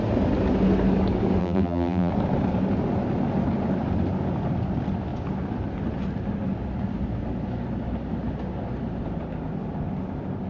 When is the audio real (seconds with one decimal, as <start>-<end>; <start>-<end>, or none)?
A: 0.0-1.4; 2.1-10.5